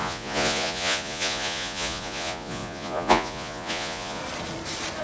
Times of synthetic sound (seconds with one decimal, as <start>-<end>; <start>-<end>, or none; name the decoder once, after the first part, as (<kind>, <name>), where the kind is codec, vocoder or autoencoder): 0.0-4.2 (vocoder, Vocos)